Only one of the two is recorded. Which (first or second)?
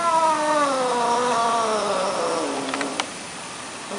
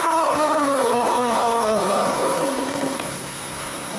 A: first